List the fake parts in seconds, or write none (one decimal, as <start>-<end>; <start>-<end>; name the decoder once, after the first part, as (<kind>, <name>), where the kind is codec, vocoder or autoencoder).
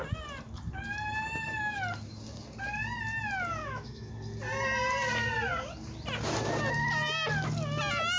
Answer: 3.6-4.1 (autoencoder, DAC-VAE)